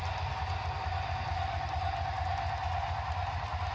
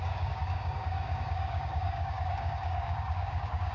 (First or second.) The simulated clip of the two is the second